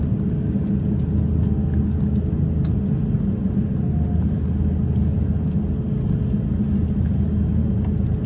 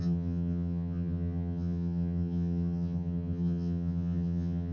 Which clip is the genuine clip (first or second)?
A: first